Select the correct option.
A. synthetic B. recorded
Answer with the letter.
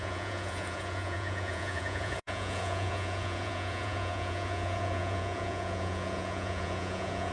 A